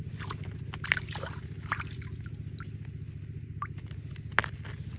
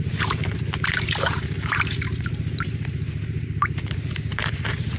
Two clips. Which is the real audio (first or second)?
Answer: first